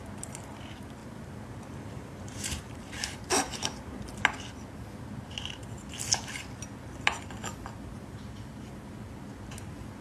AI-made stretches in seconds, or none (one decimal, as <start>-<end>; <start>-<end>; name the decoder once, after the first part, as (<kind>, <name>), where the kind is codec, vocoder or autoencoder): 1.0-4.0 (vocoder, BigVGAN v2)